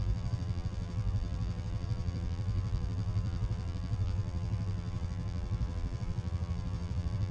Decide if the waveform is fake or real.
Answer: fake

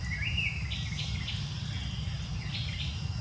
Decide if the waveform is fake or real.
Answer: real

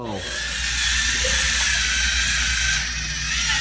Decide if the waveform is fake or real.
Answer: real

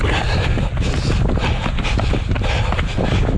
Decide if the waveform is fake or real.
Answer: real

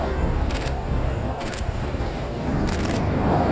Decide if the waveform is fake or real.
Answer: fake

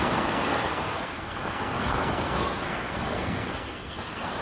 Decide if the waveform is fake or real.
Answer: fake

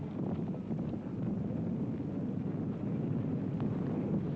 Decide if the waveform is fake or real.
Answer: real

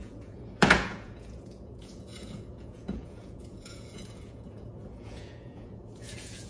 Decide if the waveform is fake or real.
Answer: fake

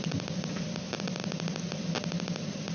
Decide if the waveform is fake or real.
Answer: real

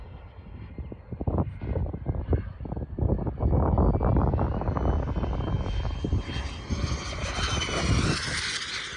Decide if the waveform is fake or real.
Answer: real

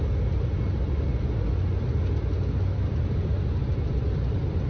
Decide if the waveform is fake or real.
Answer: real